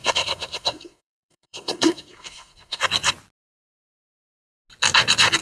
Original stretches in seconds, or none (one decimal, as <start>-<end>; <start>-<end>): 2.8-5.4